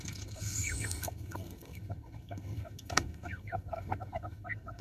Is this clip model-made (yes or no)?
yes